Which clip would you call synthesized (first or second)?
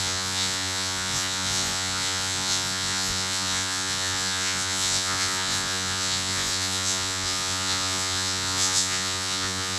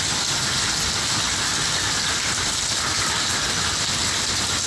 first